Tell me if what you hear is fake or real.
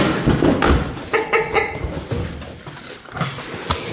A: real